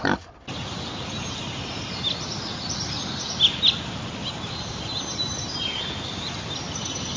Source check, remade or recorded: recorded